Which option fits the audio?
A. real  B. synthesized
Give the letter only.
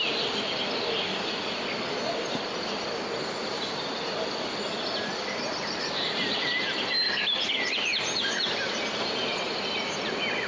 A